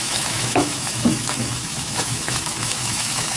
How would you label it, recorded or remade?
remade